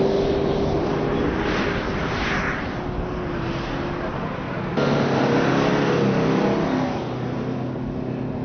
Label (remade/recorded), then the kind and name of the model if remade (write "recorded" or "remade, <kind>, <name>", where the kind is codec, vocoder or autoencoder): recorded